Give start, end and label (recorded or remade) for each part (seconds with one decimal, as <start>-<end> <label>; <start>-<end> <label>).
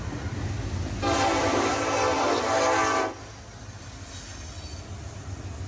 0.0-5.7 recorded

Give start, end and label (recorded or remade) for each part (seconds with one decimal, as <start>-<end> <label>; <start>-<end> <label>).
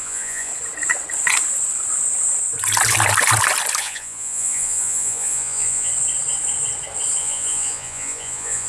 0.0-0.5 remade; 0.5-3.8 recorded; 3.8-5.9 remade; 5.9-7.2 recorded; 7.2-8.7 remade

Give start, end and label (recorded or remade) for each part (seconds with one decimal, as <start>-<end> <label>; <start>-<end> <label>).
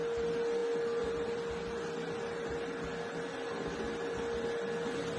0.0-5.2 recorded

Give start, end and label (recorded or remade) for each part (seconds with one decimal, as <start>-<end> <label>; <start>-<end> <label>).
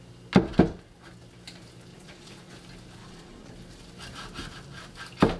0.0-1.9 recorded; 1.9-2.5 remade; 2.5-3.0 recorded; 3.0-3.5 remade; 3.5-5.4 recorded